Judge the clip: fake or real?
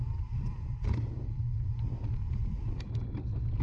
real